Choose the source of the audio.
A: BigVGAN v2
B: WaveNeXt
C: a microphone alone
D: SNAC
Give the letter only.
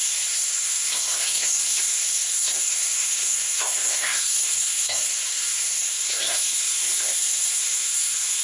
D